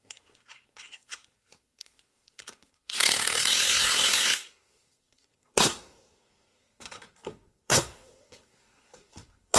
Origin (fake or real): fake